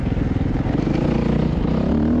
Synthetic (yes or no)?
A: no